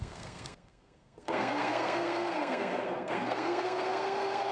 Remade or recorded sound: remade